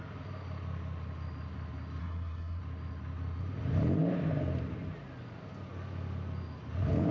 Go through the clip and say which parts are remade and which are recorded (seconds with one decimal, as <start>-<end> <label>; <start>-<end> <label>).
0.0-2.0 recorded; 2.0-2.6 remade; 2.6-7.1 recorded